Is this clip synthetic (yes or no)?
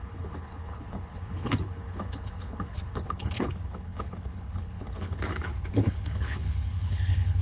yes